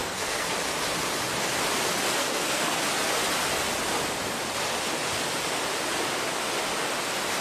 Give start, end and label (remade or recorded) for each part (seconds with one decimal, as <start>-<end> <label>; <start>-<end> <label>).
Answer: 0.0-0.5 remade; 0.5-2.2 recorded; 2.2-2.8 remade; 2.8-7.4 recorded